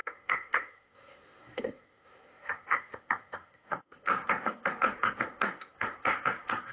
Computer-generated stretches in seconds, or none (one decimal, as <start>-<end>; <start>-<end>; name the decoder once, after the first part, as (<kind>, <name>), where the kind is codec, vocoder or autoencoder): 0.0-6.7 (codec, SNAC)